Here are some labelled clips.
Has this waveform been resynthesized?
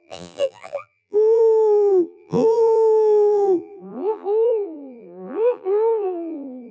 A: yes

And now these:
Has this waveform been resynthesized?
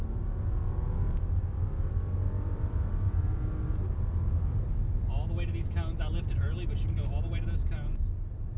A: no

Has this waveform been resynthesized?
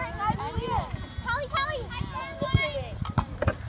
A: no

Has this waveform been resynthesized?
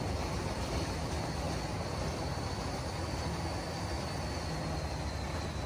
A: no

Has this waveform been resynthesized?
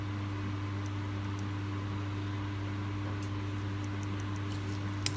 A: no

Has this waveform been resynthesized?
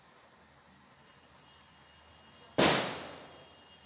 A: no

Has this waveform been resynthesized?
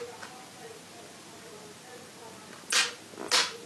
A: no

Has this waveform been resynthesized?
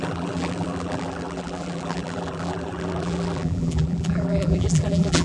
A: yes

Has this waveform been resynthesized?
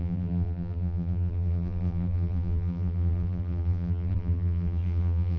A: yes